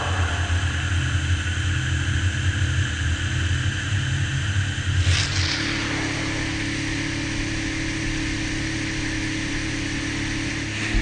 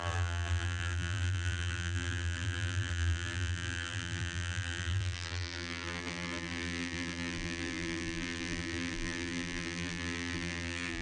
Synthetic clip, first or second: second